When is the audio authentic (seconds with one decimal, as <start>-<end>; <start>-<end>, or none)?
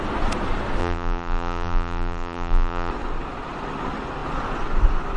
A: 0.0-0.8; 2.9-5.2